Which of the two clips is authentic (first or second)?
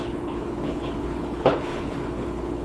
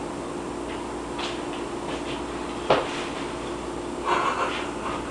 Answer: second